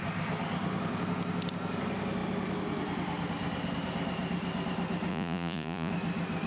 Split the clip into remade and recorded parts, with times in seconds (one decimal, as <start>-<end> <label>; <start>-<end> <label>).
0.0-5.1 recorded; 5.1-5.9 remade; 5.9-6.5 recorded